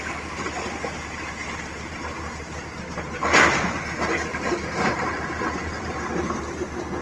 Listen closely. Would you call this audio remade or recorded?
remade